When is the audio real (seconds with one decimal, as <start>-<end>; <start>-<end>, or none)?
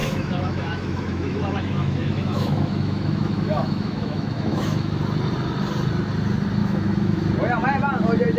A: 5.0-6.6; 7.2-8.4